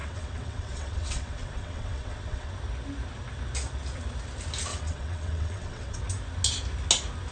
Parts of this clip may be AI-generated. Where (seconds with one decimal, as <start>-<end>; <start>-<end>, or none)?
0.0-2.5; 4.7-6.0